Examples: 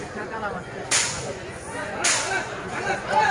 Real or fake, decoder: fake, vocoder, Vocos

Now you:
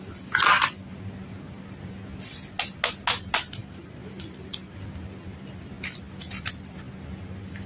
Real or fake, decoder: real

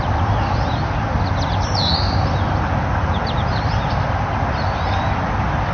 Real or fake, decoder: real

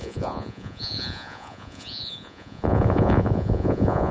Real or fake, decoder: fake, vocoder, Vocos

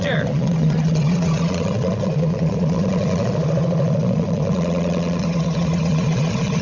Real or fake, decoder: fake, vocoder, Vocos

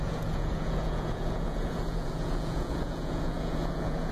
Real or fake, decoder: fake, vocoder, Vocos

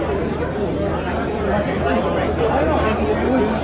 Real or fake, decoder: real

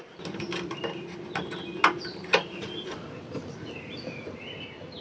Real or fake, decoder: real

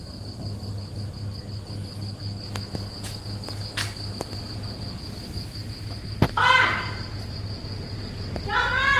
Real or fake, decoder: real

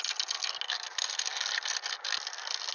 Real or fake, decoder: real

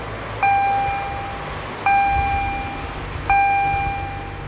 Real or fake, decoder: real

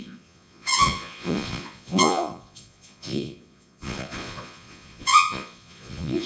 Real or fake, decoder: fake, vocoder, Vocos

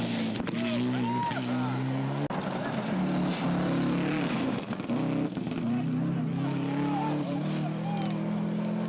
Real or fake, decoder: real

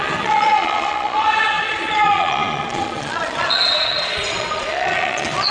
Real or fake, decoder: fake, vocoder, Vocos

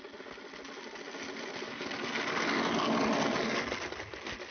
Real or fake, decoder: real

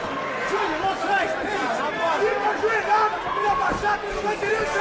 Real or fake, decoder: real